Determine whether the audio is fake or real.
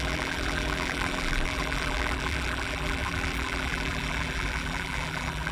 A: fake